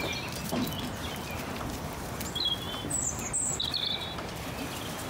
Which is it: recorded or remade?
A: recorded